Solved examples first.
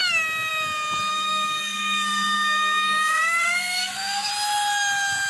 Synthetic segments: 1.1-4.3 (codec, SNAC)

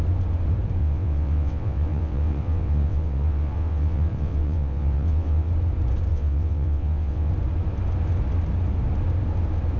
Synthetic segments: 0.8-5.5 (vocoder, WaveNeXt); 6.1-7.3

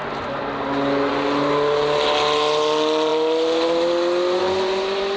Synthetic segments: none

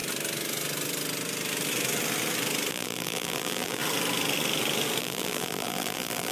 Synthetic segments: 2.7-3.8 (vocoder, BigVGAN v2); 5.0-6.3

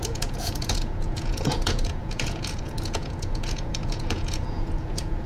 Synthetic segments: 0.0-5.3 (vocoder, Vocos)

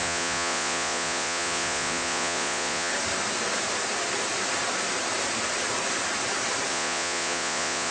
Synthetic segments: 0.0-2.9 (vocoder, Vocos); 6.7-7.9

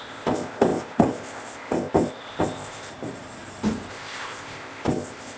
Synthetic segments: 0.0-2.9 (codec, ZipCodec); 3.9-5.4

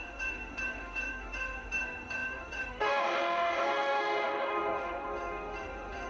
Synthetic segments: 0.0-6.1 (autoencoder, DAC-VAE)